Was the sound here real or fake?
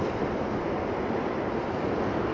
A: real